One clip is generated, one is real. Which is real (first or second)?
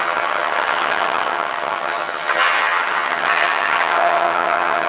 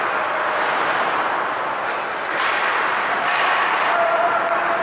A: second